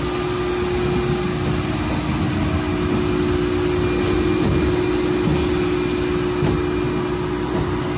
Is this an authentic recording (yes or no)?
yes